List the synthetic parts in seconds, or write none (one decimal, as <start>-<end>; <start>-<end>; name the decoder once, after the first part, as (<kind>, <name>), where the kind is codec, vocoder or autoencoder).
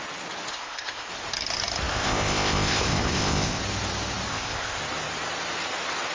0.5-1.1 (codec, ZipCodec); 1.9-3.6; 4.3-4.8